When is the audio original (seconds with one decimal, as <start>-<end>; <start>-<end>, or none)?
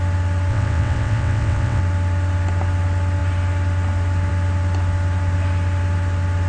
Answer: 0.0-0.5; 1.8-6.5